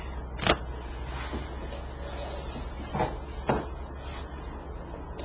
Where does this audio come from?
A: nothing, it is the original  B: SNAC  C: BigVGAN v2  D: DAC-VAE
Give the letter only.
A